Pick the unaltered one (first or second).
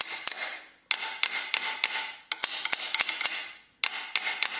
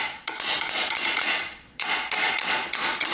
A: first